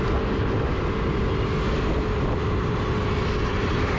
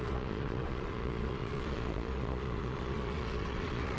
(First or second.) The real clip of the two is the first